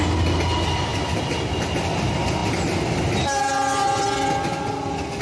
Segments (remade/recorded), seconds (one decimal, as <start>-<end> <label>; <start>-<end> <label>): 0.0-5.2 recorded

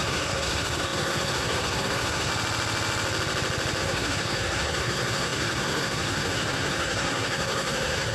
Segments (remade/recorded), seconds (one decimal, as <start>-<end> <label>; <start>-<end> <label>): 0.0-2.3 remade; 2.3-3.8 recorded; 3.8-8.1 remade

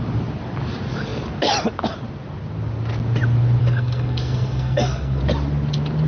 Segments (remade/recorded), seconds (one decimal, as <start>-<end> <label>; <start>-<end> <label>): 0.0-3.6 recorded; 3.6-5.2 remade; 5.2-6.1 recorded

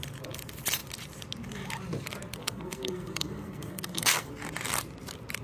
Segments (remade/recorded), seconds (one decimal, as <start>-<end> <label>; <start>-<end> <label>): 0.0-2.4 recorded; 2.4-4.3 remade; 4.3-5.4 recorded

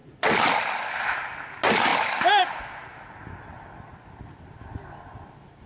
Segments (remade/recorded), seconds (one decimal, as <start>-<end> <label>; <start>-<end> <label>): 0.0-5.7 recorded

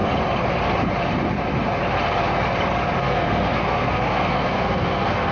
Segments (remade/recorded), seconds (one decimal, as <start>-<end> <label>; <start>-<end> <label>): 0.0-3.0 recorded; 3.0-5.3 remade

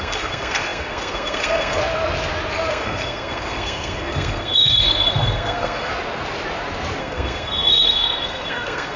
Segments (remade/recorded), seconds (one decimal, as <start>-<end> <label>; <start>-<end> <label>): 0.0-1.8 remade; 1.8-2.7 recorded; 2.7-5.9 remade; 5.9-7.0 recorded; 7.0-9.0 remade

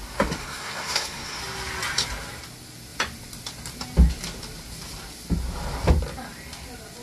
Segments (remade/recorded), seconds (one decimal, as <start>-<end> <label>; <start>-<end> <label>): 0.0-0.4 recorded; 0.4-1.4 remade; 1.4-7.0 recorded